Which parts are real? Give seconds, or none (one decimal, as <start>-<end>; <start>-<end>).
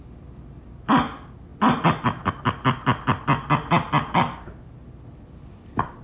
0.0-6.0